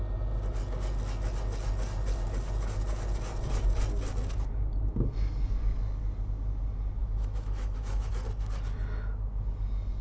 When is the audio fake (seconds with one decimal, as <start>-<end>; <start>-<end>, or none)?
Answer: 7.0-8.1